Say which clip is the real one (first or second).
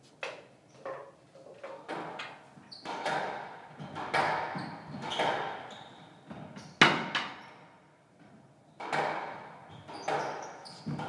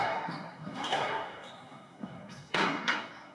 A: first